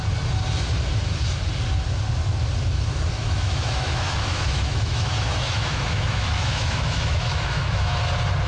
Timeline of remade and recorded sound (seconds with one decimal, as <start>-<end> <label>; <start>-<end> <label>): 0.0-3.2 recorded; 3.2-8.0 remade; 8.0-8.5 recorded